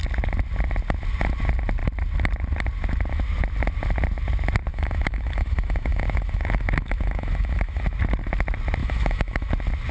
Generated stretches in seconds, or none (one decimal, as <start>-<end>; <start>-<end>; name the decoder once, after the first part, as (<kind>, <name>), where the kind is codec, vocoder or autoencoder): 4.7-7.8 (autoencoder, DAC-VAE); 8.8-9.5